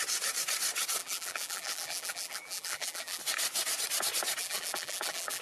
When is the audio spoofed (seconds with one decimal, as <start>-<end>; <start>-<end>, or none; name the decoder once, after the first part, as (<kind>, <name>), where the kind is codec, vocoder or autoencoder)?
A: 1.0-3.2 (vocoder, BigVGAN v2); 4.4-5.4